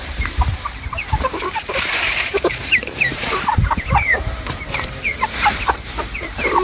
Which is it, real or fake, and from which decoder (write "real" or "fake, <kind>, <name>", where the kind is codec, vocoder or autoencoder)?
fake, vocoder, BigVGAN v2